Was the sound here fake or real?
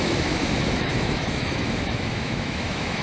fake